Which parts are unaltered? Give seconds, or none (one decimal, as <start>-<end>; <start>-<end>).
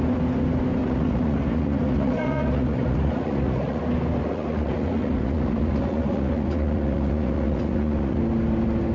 0.0-0.8; 3.8-4.2; 8.2-8.9